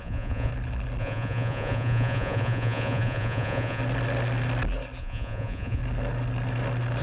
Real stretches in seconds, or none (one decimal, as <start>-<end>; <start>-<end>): 0.5-1.0; 3.8-5.0; 5.8-7.0